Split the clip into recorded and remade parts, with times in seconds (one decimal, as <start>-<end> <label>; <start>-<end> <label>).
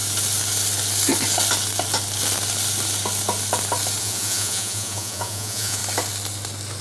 0.0-4.0 recorded; 4.0-5.8 remade; 5.8-6.8 recorded